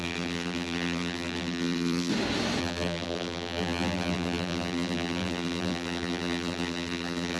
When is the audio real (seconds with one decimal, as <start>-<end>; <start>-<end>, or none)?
2.1-2.6